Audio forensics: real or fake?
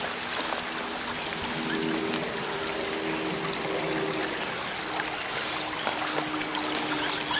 real